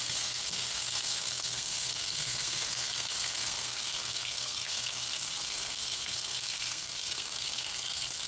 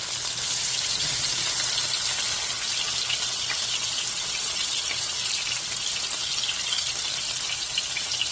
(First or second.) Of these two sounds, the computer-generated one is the first